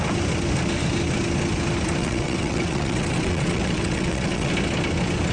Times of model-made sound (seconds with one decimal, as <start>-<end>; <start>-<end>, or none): 2.0-4.5